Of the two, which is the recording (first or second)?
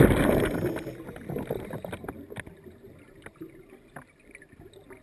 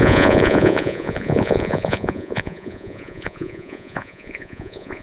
first